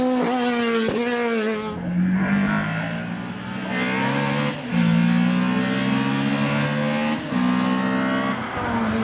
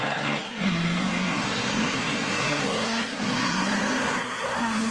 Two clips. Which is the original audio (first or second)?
first